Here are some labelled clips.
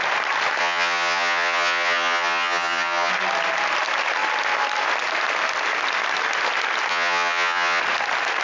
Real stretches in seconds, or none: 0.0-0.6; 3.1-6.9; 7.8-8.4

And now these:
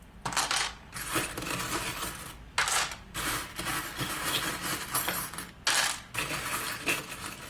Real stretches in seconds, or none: 0.0-1.9; 3.6-7.5

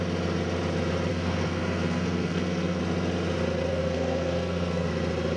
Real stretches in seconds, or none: 0.0-1.1; 2.8-3.7; 4.9-5.4